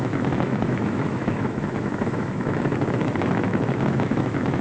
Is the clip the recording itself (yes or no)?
no